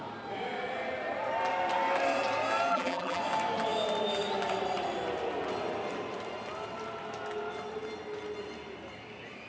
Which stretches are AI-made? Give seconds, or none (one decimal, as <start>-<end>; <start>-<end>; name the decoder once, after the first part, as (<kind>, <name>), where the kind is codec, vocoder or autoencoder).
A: 2.7-3.2 (vocoder, BigVGAN v2)